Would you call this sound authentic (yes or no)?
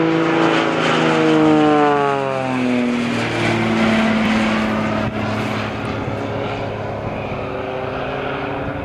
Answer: yes